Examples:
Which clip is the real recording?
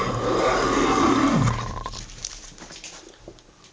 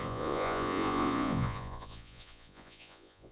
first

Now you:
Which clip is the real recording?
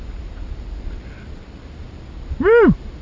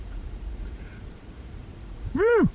first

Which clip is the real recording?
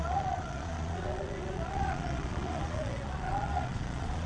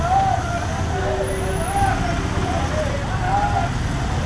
second